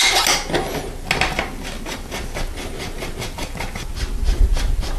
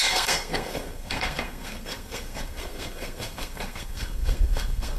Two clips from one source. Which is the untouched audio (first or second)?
first